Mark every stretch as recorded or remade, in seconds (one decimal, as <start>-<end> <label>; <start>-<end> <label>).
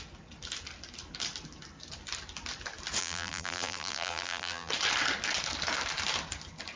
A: 0.0-3.0 recorded; 3.0-4.7 remade; 4.7-6.8 recorded